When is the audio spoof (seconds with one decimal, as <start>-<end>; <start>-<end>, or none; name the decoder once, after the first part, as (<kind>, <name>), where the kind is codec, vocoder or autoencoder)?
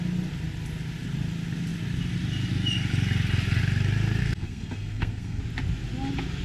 4.2-5.4 (codec, SNAC)